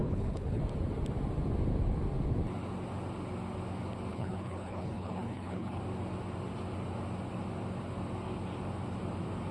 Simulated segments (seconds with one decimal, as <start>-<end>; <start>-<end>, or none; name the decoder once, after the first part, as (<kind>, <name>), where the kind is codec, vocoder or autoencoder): 0.0-0.6 (codec, HILCodec); 4.1-5.8